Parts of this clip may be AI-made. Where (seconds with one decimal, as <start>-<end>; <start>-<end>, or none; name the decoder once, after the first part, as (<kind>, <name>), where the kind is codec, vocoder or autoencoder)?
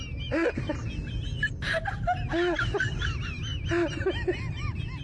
none